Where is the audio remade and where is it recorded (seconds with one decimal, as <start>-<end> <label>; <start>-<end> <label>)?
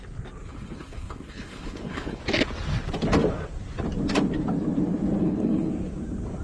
0.0-0.5 recorded; 0.5-2.2 remade; 2.2-5.2 recorded; 5.2-5.7 remade; 5.7-6.4 recorded